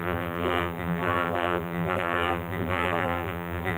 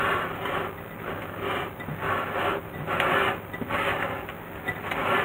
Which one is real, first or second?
second